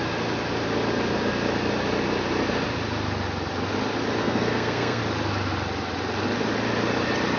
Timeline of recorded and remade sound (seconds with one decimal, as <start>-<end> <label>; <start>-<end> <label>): 0.0-4.2 recorded; 4.2-5.0 remade; 5.0-7.4 recorded